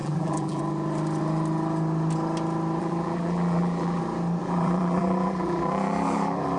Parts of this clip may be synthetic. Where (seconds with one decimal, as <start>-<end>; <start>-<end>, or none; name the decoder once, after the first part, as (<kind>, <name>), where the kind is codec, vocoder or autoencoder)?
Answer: 0.0-0.6 (vocoder, BigVGAN v2); 2.8-4.0; 4.4-6.6